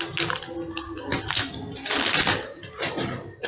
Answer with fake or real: real